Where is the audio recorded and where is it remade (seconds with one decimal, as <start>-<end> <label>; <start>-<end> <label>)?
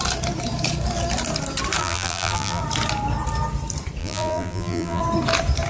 0.0-1.8 recorded; 1.8-2.6 remade; 2.6-4.0 recorded; 4.0-5.0 remade; 5.0-5.7 recorded